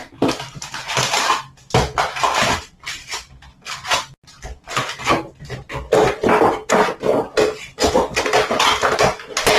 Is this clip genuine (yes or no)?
yes